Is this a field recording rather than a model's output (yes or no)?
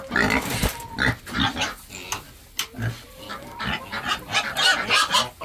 yes